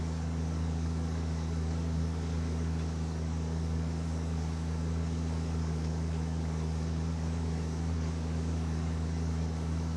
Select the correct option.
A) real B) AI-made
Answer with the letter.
B